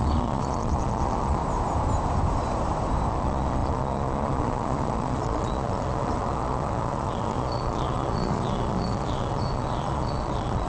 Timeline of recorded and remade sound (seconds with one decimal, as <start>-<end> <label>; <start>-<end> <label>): 0.0-1.4 remade; 1.4-3.1 recorded; 3.1-10.7 remade

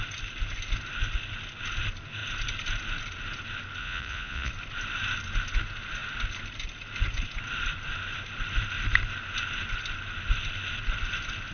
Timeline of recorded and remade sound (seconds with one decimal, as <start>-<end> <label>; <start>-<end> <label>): 0.0-3.8 recorded; 3.8-4.5 remade; 4.5-11.5 recorded